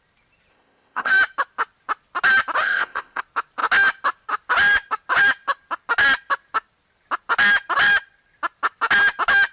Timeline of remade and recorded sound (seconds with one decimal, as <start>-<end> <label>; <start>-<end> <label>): 0.0-0.5 recorded; 0.5-1.1 remade; 1.1-2.6 recorded; 2.6-3.2 remade; 3.2-9.5 recorded